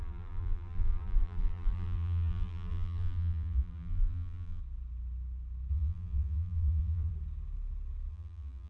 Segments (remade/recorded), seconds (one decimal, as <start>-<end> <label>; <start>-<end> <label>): 0.0-4.6 remade; 4.6-5.7 recorded; 5.7-7.1 remade; 7.1-8.1 recorded; 8.1-8.7 remade